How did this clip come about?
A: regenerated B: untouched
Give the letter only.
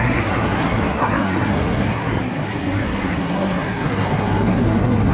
A